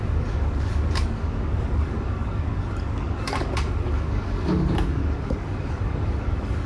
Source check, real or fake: fake